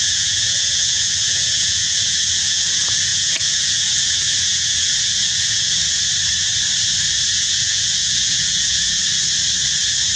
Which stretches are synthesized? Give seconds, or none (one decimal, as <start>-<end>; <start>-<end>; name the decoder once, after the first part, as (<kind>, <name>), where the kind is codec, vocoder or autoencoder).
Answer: 0.0-6.1 (vocoder, Vocos); 7.3-9.0